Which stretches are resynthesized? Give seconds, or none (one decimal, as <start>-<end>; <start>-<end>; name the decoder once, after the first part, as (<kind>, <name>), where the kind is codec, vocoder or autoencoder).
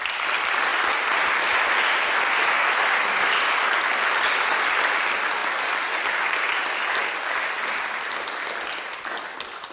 none